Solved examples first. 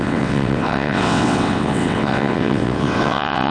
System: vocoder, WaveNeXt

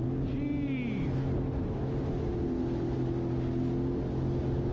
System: none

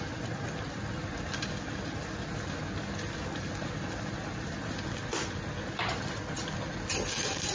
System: none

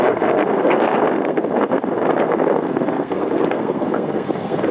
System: codec, SNAC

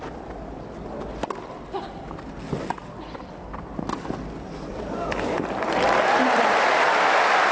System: none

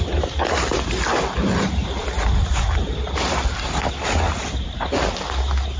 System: none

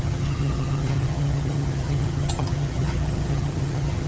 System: vocoder, HiFi-GAN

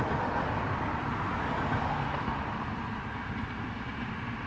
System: none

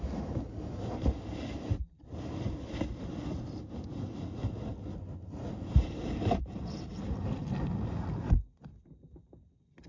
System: none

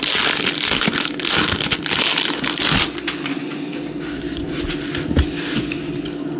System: none